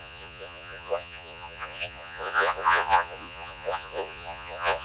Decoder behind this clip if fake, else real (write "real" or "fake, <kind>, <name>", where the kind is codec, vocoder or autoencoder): fake, vocoder, Vocos